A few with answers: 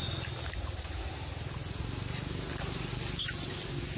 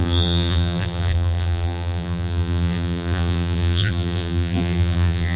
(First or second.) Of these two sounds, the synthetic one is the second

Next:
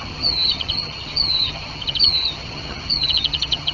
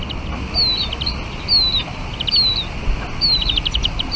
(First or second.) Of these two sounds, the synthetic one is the first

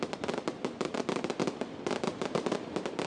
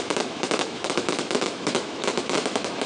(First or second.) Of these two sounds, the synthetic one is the second